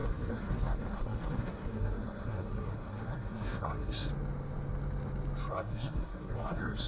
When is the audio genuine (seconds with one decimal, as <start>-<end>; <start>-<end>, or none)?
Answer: 4.1-5.5